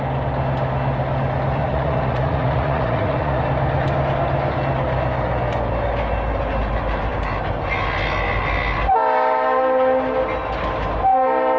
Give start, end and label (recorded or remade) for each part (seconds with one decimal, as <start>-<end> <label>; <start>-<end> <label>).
0.0-1.6 recorded; 1.6-3.4 remade; 3.4-11.6 recorded